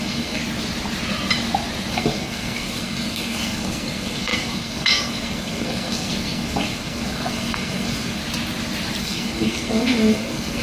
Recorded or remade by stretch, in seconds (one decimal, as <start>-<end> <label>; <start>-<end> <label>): 0.0-0.4 remade; 0.4-1.9 recorded; 1.9-8.2 remade; 8.2-9.0 recorded; 9.0-10.6 remade